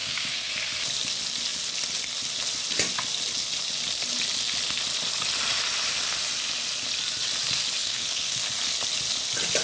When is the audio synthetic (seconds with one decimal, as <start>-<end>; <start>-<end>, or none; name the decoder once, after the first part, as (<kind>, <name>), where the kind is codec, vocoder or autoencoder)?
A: 0.0-0.5 (codec, SNAC); 7.8-8.4